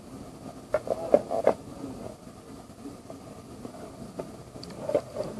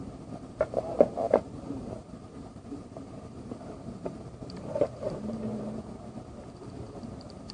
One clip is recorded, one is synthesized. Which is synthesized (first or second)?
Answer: second